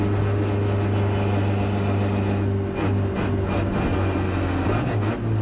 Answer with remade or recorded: recorded